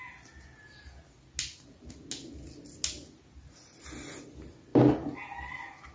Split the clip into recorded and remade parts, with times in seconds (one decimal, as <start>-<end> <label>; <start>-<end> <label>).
0.0-5.9 recorded